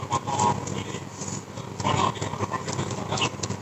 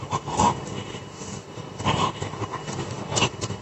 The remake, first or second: second